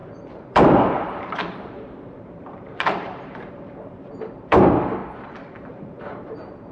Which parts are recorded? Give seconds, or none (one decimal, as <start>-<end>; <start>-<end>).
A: 5.0-5.6

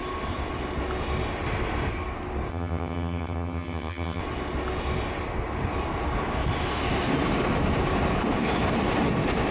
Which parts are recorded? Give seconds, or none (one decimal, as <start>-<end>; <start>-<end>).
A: 0.0-2.5; 4.2-9.5

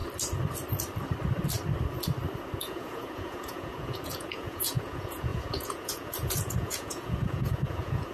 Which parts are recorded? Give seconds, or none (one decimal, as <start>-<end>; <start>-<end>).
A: 0.0-2.6

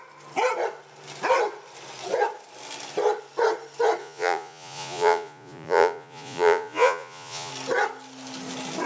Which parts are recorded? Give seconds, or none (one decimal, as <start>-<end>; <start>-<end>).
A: 0.0-4.0; 7.5-8.9

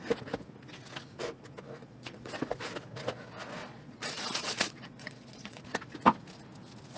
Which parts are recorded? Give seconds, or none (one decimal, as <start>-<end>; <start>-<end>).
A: 0.0-1.8; 2.3-3.6; 5.6-7.0

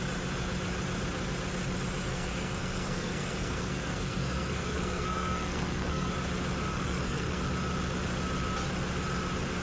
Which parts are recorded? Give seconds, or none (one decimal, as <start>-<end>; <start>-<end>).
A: 0.0-2.1; 6.1-6.7; 7.4-9.6

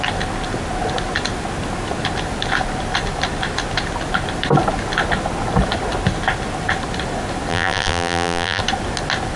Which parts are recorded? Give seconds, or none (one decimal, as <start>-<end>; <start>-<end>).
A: 0.0-7.5; 8.6-9.4

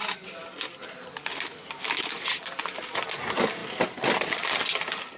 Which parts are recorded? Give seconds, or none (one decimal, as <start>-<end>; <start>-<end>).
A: 0.0-5.2